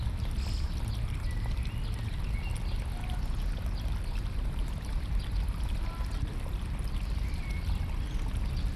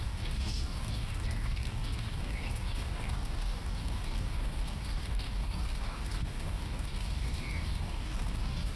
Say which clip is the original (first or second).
first